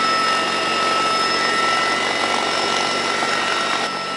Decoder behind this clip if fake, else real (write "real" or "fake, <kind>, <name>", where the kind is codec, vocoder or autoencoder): real